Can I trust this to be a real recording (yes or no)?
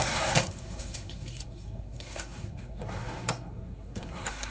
no